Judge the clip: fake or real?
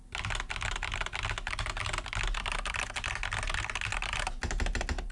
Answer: real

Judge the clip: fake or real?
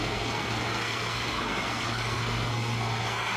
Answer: fake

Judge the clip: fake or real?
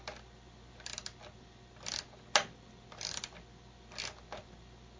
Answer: real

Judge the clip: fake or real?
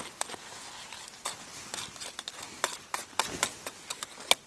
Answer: real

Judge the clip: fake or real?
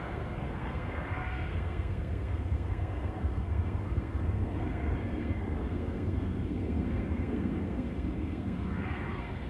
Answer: fake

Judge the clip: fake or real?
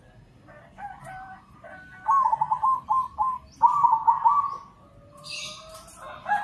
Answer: real